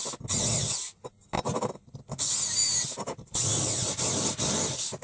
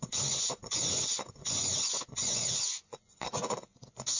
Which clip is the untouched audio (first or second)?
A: first